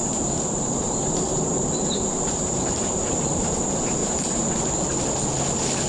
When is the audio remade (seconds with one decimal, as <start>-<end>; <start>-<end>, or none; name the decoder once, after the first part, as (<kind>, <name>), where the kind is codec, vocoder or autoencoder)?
0.0-3.5 (vocoder, BigVGAN v2); 4.0-4.5